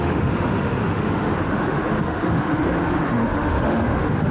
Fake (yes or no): yes